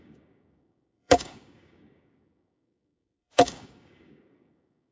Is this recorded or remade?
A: remade